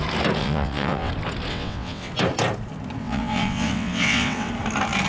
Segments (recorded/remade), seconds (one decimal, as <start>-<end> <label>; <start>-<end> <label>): 0.0-0.4 recorded; 0.4-1.1 remade; 1.1-1.5 recorded; 1.5-2.1 remade; 2.1-3.0 recorded; 3.0-4.5 remade; 4.5-5.1 recorded